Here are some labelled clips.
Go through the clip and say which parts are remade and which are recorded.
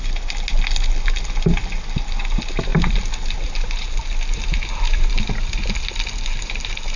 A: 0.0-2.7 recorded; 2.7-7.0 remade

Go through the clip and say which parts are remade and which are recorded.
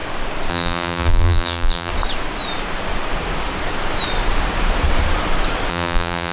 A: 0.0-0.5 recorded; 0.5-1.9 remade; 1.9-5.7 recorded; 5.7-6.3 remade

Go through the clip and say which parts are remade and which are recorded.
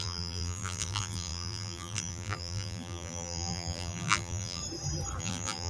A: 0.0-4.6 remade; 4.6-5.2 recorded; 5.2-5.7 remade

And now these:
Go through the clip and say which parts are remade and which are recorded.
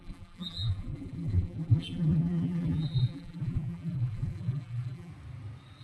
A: 0.0-5.1 remade; 5.1-5.8 recorded